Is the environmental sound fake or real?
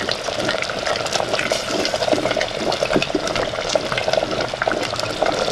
real